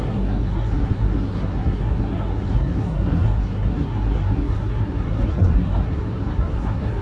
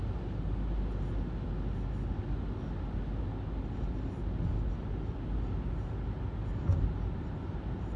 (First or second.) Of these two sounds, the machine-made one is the first